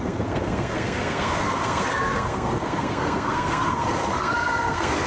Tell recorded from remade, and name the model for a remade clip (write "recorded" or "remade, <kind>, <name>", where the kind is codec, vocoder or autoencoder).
remade, codec, SNAC